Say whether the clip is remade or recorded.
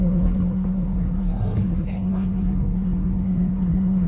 remade